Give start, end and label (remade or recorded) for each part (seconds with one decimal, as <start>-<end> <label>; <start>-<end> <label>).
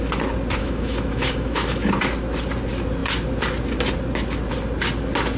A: 0.0-0.6 recorded; 0.6-1.9 remade; 1.9-5.4 recorded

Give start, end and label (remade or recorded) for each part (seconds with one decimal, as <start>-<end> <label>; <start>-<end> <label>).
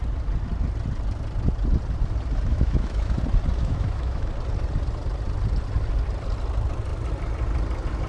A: 0.0-2.5 recorded; 2.5-3.2 remade; 3.2-3.6 recorded; 3.6-4.3 remade; 4.3-8.1 recorded